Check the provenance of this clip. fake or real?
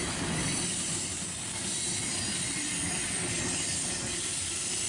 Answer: fake